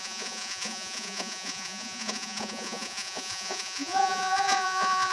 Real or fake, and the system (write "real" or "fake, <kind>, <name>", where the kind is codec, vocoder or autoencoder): fake, vocoder, Vocos